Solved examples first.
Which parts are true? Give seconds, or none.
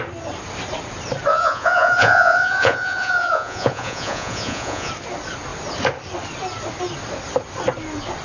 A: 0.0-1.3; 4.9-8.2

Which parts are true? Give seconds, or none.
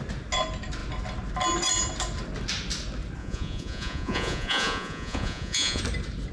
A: 0.0-3.2; 5.8-6.3